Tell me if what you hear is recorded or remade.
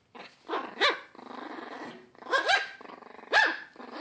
recorded